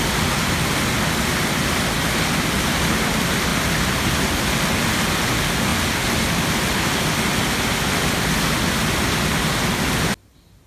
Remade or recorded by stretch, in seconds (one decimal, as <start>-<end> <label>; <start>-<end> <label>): 0.0-10.7 recorded